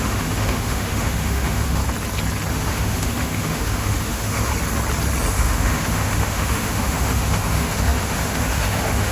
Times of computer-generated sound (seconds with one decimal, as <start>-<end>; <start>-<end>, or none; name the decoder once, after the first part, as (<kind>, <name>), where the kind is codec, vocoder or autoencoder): 0.0-1.8 (autoencoder, DAC-VAE); 2.5-4.5; 5.3-9.1